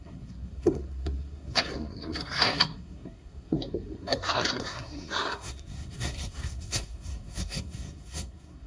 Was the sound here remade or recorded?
remade